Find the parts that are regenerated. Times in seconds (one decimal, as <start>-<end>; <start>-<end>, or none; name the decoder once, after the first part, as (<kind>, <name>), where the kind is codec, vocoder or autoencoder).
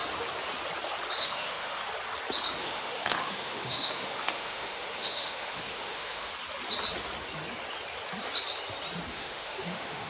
1.2-1.8 (autoencoder, DAC-VAE); 2.6-6.3; 9.1-10.1